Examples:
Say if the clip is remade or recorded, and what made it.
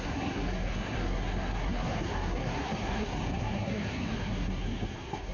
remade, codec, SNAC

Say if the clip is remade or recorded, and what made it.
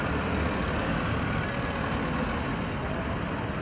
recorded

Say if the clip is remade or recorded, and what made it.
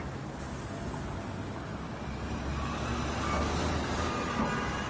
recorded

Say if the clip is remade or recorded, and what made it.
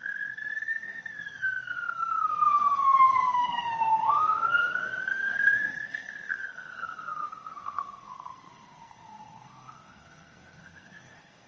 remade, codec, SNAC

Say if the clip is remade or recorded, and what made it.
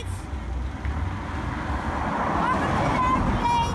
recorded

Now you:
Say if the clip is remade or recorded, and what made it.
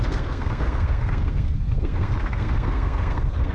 remade, codec, SNAC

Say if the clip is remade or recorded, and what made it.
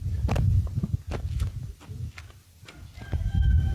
recorded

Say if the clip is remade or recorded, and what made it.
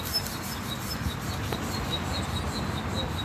recorded